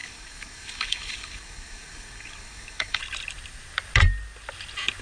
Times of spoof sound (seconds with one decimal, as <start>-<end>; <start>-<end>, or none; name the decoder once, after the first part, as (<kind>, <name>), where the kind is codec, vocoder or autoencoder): 0.0-3.0 (codec, DAC)